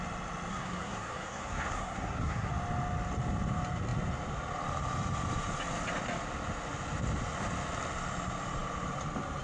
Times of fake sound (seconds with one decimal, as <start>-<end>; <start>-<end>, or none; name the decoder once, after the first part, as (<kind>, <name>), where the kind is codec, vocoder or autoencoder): 0.5-2.5 (codec, SNAC)